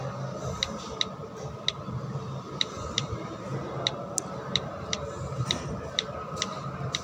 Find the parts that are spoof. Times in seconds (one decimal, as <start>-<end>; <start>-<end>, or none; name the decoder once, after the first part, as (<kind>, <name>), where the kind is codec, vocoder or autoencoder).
none